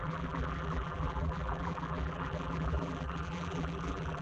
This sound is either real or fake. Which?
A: fake